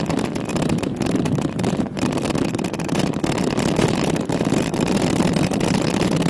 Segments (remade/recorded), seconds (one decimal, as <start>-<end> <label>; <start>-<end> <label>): 0.0-6.3 recorded